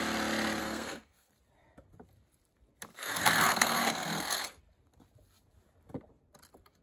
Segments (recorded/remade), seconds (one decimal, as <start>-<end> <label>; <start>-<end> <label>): 0.0-0.6 recorded; 0.6-1.3 remade; 1.3-2.9 recorded; 2.9-4.6 remade; 4.6-6.8 recorded

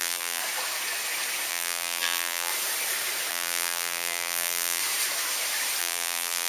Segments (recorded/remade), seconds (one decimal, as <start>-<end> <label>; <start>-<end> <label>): 0.0-0.4 remade; 0.4-1.5 recorded; 1.5-2.5 remade; 2.5-3.3 recorded; 3.3-4.8 remade; 4.8-5.8 recorded; 5.8-6.5 remade

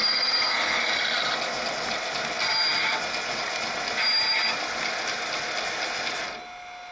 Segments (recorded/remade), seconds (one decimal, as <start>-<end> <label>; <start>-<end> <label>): 0.0-0.8 remade; 0.8-6.9 recorded

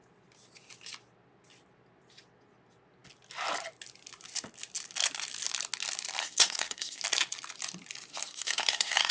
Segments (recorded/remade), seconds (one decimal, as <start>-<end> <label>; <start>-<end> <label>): 0.0-6.2 recorded; 6.2-7.0 remade; 7.0-8.1 recorded; 8.1-9.1 remade